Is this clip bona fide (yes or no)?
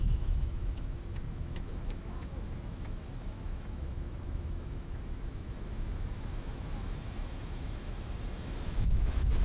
no